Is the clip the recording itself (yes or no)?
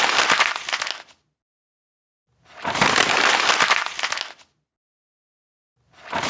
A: yes